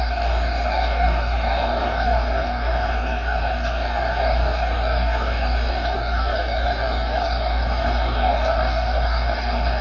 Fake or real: fake